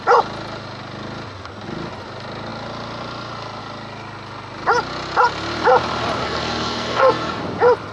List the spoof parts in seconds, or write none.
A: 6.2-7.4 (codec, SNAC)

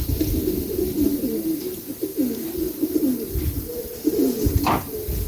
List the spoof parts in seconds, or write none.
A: none

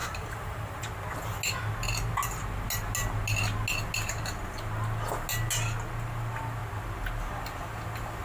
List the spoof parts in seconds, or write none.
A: 0.0-0.8 (vocoder, BigVGAN v2)

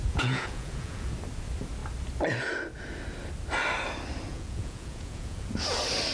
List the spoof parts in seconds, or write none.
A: 0.0-1.1 (vocoder, Vocos); 4.3-5.5

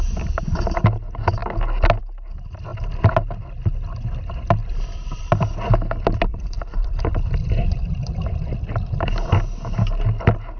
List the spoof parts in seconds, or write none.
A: 2.7-3.3 (vocoder, BigVGAN v2); 4.6-9.3

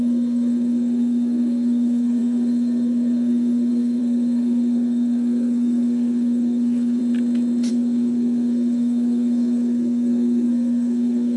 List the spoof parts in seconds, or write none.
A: 0.0-7.0 (codec, SNAC); 7.7-11.4